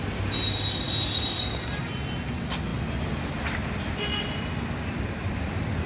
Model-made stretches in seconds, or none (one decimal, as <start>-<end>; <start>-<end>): none